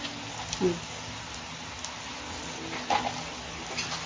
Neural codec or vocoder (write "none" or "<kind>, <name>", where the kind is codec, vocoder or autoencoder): none